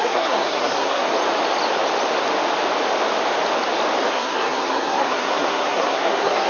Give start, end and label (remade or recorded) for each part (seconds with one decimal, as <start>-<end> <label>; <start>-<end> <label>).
0.0-1.1 remade; 1.1-4.1 recorded; 4.1-6.5 remade